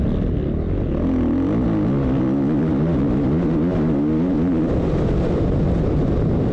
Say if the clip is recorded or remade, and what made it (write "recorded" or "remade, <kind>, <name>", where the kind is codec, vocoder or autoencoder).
recorded